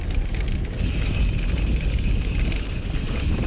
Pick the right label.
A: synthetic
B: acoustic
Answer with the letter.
B